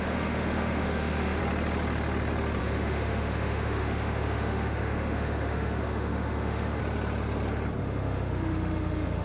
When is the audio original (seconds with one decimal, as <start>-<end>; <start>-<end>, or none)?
1.4-2.6; 6.8-7.8